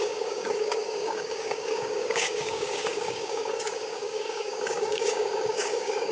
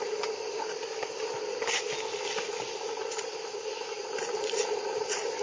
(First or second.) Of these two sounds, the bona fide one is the second